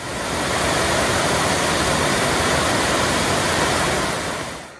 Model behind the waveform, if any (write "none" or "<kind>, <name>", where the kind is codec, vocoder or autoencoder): none